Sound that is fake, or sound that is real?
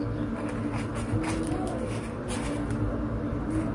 real